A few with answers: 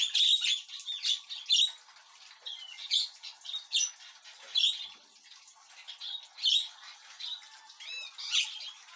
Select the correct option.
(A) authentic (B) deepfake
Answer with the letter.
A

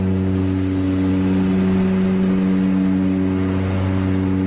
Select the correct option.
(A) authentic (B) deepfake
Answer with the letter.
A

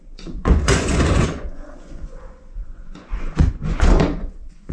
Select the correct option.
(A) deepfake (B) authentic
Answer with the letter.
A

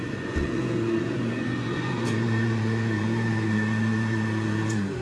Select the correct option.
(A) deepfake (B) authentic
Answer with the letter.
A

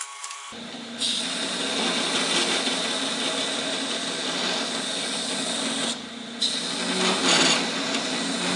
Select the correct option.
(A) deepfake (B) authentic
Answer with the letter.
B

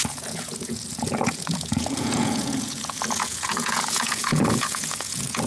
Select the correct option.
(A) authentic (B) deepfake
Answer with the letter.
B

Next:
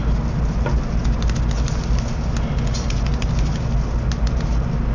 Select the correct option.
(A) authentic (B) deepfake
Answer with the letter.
A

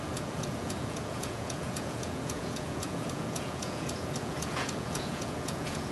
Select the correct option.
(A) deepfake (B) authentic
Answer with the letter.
A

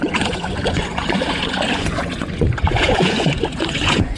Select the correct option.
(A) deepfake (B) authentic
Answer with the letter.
A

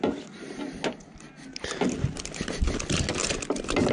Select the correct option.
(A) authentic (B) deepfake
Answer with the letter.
A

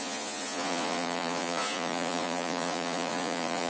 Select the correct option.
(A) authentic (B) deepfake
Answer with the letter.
B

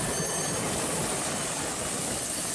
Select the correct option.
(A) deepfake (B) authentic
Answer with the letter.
B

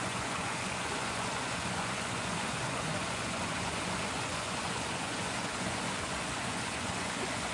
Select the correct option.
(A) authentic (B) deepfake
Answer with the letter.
B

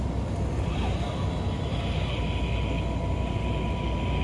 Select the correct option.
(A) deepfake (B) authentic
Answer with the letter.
B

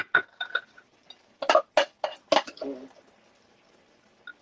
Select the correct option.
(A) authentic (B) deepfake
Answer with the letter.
A